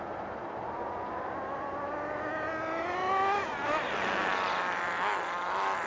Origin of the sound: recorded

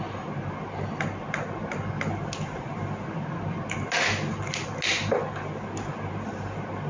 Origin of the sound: recorded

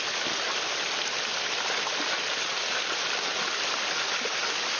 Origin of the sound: recorded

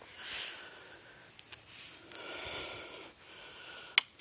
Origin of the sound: recorded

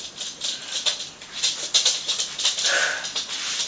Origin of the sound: recorded